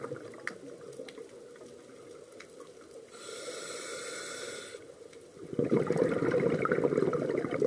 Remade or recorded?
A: recorded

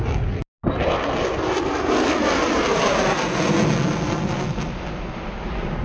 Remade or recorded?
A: recorded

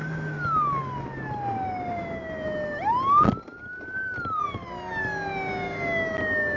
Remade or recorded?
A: recorded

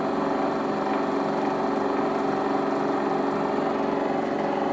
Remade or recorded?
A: recorded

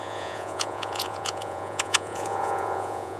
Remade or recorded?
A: remade